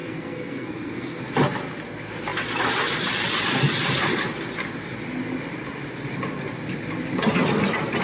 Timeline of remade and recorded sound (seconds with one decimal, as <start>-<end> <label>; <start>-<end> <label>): 0.0-1.2 remade; 1.2-8.0 recorded